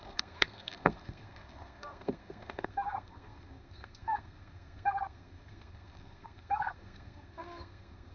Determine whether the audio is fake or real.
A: fake